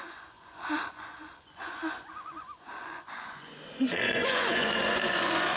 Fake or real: fake